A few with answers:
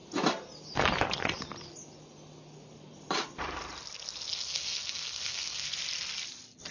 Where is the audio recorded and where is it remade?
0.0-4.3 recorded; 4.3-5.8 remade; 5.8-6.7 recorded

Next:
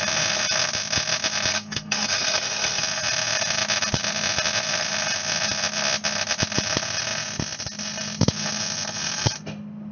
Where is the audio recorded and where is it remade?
0.0-1.5 recorded; 1.5-2.8 remade; 2.8-9.9 recorded

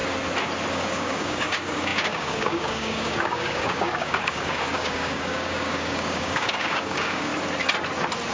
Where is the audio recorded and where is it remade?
0.0-0.7 recorded; 0.7-7.3 remade; 7.3-8.3 recorded

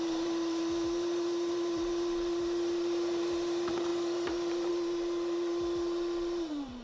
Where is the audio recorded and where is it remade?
0.0-6.8 remade